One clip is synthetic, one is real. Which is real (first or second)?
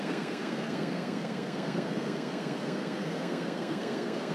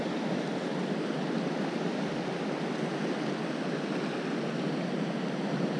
second